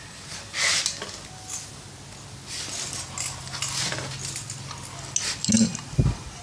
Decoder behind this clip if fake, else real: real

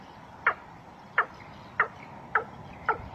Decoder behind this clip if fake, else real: real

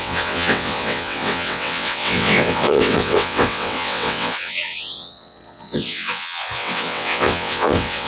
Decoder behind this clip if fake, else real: fake, vocoder, WaveNeXt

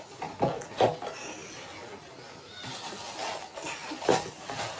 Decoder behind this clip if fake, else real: real